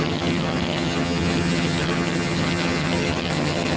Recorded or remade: remade